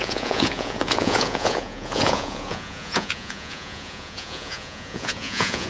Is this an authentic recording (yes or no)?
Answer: no